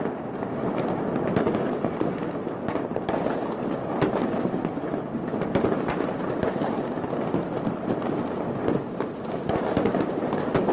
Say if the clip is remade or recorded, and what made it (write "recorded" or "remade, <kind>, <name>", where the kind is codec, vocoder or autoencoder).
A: recorded